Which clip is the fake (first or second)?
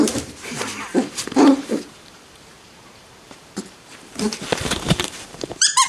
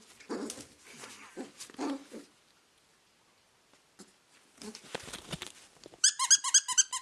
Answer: first